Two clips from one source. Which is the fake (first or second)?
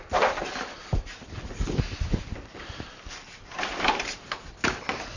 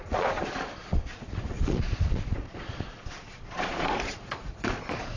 second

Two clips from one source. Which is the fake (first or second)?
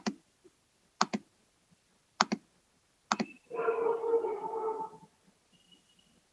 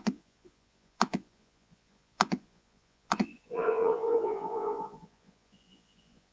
second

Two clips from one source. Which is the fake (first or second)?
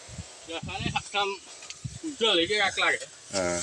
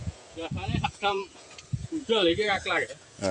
second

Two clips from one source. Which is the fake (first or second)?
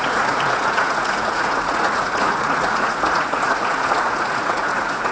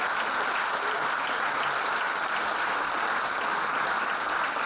first